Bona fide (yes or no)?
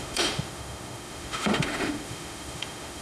no